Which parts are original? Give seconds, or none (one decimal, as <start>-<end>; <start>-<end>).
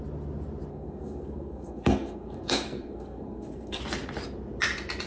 0.0-0.7; 3.8-5.1